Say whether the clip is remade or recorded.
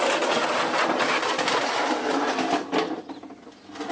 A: recorded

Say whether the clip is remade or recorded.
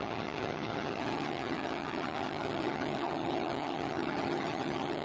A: remade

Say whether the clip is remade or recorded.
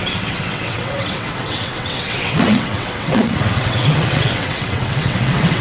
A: remade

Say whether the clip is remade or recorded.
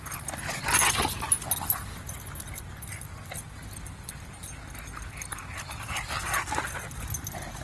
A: recorded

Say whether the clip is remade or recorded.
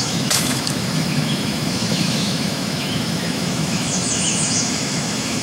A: remade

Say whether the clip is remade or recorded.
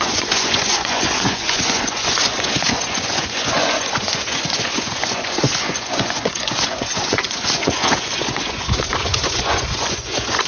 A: remade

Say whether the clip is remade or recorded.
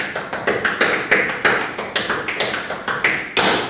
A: recorded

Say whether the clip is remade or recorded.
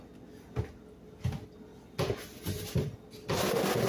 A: recorded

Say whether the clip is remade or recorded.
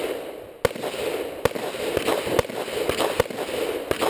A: recorded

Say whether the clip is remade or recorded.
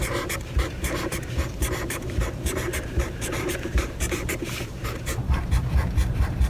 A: remade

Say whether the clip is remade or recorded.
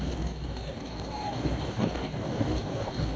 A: remade